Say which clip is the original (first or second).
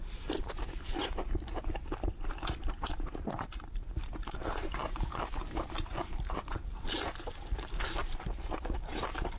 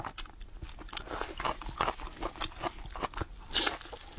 second